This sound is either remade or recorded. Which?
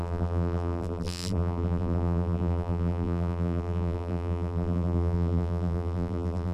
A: remade